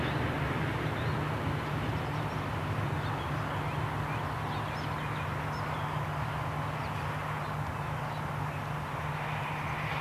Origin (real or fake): real